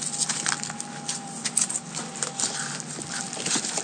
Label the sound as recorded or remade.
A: recorded